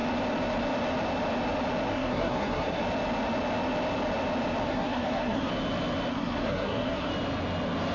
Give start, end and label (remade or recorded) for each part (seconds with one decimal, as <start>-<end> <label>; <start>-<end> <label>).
0.0-1.9 recorded; 1.9-2.8 remade; 2.8-4.6 recorded; 4.6-5.5 remade; 5.5-6.1 recorded; 6.1-7.1 remade; 7.1-7.9 recorded